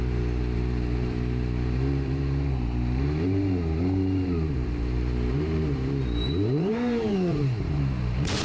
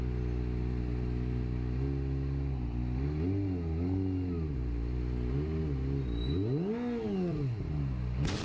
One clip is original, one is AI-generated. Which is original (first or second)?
second